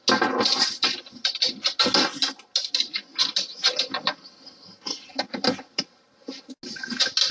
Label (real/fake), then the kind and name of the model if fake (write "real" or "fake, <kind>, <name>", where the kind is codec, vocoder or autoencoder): real